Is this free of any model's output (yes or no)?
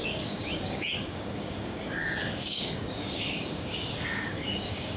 no